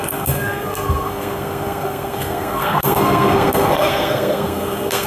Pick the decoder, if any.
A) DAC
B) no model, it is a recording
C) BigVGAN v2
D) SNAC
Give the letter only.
D